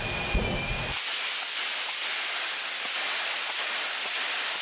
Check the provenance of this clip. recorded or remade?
recorded